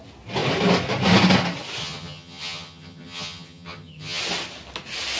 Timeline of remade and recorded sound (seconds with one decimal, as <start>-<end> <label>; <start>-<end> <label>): 0.0-1.8 recorded; 1.8-4.2 remade; 4.2-5.2 recorded